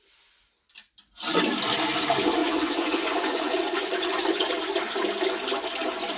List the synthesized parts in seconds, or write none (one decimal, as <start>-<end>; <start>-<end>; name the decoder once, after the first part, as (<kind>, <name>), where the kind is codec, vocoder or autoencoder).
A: 2.4-4.5 (vocoder, Vocos)